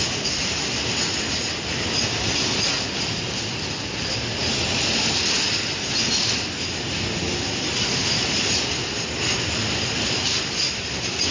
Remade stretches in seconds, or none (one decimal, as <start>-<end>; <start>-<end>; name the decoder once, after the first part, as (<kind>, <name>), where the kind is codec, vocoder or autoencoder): none